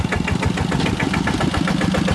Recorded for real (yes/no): yes